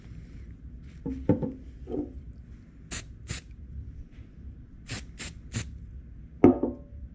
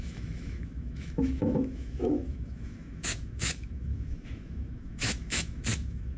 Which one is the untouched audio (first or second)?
first